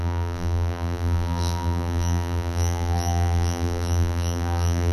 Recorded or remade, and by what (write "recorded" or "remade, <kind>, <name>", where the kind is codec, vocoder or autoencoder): remade, vocoder, BigVGAN v2